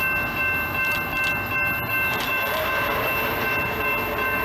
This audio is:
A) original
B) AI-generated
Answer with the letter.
A